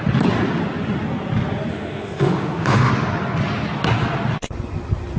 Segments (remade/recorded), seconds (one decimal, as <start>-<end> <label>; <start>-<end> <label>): 0.0-1.7 recorded; 1.7-2.9 remade; 2.9-5.2 recorded